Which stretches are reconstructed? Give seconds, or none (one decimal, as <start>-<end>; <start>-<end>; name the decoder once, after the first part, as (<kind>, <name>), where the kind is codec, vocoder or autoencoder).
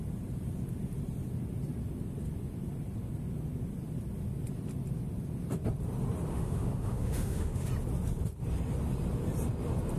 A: 6.3-7.7 (autoencoder, DAC-VAE)